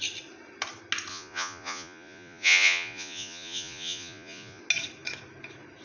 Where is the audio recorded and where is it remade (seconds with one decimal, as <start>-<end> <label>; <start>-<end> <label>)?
0.0-1.1 recorded; 1.1-4.6 remade; 4.6-5.8 recorded